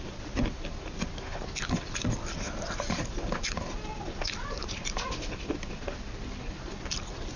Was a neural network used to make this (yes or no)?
no